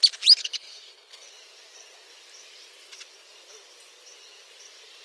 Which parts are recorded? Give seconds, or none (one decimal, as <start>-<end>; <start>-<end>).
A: 0.0-0.4; 1.3-5.0